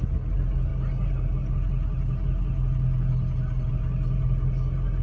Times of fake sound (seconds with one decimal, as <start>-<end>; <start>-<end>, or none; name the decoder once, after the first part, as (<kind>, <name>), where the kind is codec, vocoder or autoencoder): none